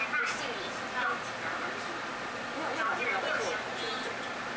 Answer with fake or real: real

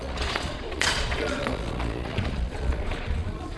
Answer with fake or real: fake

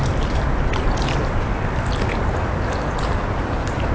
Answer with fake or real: real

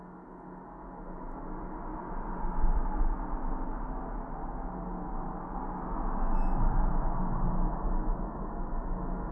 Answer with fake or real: real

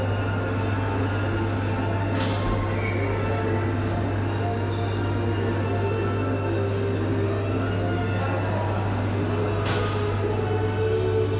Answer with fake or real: real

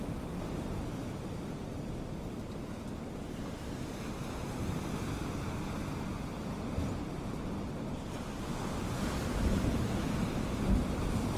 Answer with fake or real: real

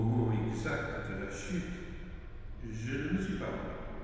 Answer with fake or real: real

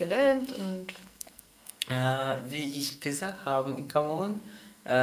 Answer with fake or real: fake